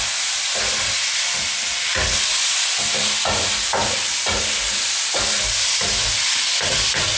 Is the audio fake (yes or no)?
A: no